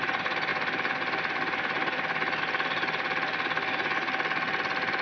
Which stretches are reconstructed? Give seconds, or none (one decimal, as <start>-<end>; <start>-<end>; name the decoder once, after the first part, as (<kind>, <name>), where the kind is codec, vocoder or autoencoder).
none